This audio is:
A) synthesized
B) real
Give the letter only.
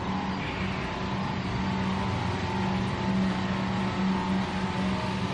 B